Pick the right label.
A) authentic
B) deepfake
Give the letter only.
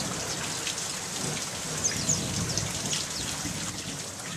A